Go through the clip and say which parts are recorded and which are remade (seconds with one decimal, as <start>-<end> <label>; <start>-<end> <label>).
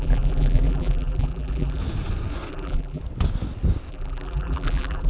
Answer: 0.0-1.8 remade; 1.8-2.5 recorded; 2.5-3.0 remade; 3.0-3.9 recorded; 3.9-5.1 remade